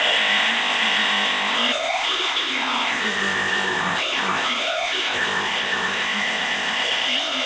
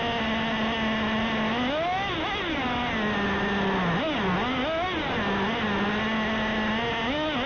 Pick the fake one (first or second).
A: first